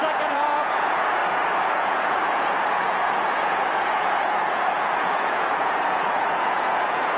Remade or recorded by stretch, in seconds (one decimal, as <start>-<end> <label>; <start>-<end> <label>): 0.0-1.2 remade; 1.2-1.7 recorded; 1.7-7.2 remade